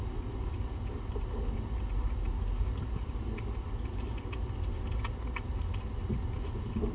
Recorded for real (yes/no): yes